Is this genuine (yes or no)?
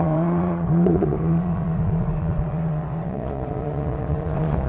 no